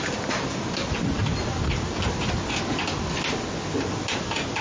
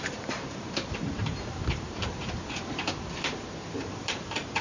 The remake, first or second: second